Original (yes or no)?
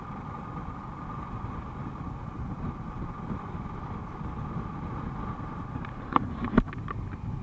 yes